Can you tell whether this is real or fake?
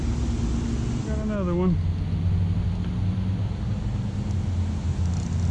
real